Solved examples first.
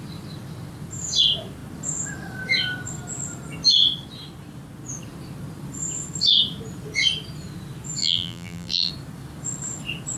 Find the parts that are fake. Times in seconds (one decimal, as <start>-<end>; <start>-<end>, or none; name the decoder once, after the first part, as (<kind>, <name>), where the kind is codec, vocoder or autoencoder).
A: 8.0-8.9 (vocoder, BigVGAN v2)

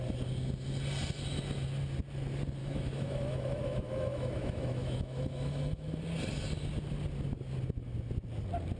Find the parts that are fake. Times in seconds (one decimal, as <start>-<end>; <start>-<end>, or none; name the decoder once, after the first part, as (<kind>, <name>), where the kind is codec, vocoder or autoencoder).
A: 2.6-6.0 (autoencoder, DAC-VAE)

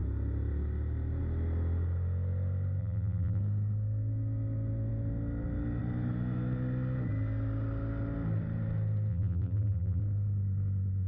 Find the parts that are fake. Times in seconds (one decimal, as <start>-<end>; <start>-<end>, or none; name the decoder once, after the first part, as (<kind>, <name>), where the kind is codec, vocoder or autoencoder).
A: 2.8-3.4 (vocoder, BigVGAN v2); 9.1-10.0

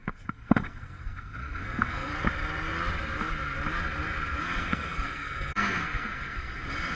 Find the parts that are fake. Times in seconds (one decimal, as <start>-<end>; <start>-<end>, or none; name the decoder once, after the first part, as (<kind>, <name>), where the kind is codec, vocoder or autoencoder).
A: 0.0-2.1 (codec, SNAC); 4.4-6.9

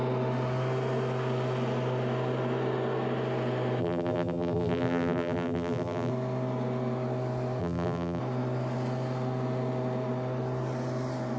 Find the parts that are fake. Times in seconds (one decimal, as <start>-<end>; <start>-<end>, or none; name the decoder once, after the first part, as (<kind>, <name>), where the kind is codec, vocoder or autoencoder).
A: 3.8-6.1 (vocoder, BigVGAN v2); 7.6-8.2

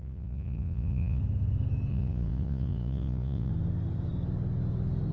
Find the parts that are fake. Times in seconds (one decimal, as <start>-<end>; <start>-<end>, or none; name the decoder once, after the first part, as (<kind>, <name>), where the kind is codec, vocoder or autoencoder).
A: 0.0-1.2 (vocoder, Vocos); 1.9-3.5